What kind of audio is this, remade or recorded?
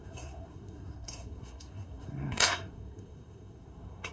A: remade